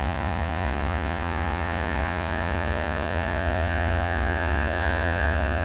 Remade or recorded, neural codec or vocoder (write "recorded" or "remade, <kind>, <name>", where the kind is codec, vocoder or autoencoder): remade, vocoder, Vocos